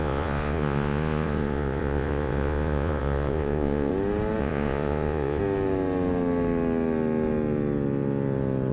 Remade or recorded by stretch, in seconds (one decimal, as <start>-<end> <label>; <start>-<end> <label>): 0.0-3.9 remade; 3.9-4.4 recorded; 4.4-5.4 remade; 5.4-8.7 recorded